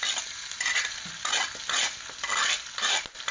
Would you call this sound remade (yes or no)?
no